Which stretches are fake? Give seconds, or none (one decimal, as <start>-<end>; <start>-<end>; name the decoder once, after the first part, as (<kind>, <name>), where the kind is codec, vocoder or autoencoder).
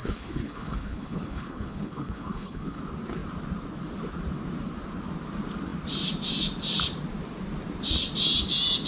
0.0-2.8 (codec, HILCodec)